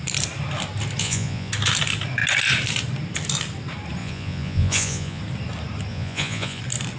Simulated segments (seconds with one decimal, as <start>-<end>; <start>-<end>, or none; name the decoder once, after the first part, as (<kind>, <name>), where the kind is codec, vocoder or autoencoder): 1.0-1.5 (vocoder, Vocos); 4.0-5.2; 5.9-6.6